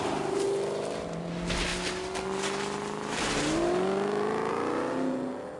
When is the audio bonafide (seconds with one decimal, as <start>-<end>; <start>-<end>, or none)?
0.0-5.6